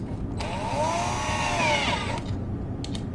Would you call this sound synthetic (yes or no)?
no